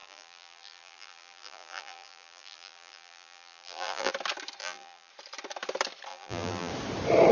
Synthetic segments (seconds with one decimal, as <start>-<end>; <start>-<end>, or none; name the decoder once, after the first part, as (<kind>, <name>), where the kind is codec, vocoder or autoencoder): 0.0-4.1 (vocoder, BigVGAN v2); 4.6-5.1; 6.1-6.7